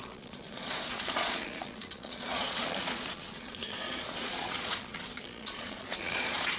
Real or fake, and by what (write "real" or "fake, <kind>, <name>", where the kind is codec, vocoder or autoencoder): fake, vocoder, Vocos